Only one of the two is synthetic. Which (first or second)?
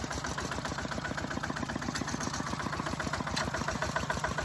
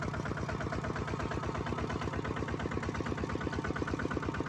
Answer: first